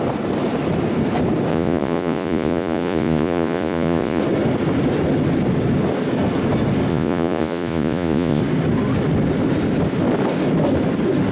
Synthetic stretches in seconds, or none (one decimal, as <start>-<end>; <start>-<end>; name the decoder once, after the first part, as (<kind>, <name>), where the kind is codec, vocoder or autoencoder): 1.5-4.2 (vocoder, Vocos); 6.9-8.4